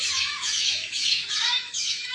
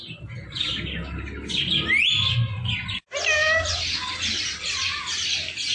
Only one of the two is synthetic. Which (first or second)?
first